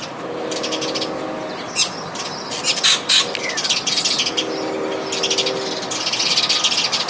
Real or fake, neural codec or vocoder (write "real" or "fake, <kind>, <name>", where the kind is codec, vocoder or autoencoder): real